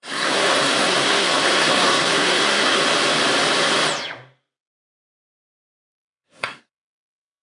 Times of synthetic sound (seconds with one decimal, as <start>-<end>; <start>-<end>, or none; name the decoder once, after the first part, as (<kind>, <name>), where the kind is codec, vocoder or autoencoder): 0.0-2.8 (codec, SNAC); 5.2-7.4